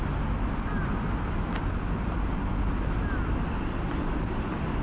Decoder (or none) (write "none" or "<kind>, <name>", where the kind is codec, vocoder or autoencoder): none